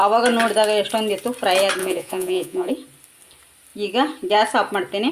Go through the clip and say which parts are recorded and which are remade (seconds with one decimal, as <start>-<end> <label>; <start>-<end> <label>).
0.0-1.8 recorded; 1.8-2.7 remade; 2.7-5.1 recorded